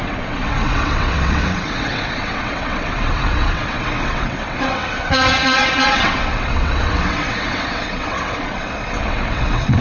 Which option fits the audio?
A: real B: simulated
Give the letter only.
B